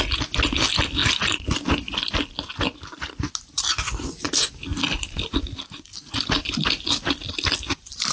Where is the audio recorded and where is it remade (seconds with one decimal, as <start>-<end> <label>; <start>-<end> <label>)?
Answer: 0.0-8.1 recorded